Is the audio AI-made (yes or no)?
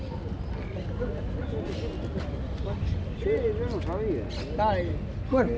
no